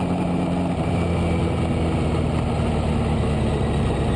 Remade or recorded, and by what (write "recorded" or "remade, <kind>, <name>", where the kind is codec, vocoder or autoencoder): recorded